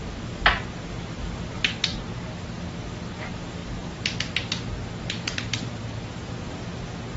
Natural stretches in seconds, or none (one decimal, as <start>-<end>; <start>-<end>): 0.0-7.2